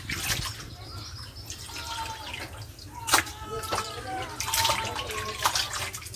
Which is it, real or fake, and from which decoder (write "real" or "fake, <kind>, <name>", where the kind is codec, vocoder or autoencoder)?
real